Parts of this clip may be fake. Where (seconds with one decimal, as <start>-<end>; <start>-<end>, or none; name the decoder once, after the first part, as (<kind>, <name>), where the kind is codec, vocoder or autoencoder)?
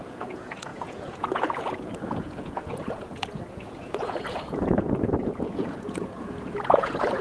0.0-7.2 (vocoder, Vocos)